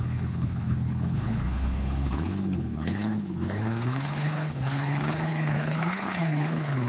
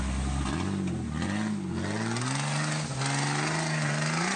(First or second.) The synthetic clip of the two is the first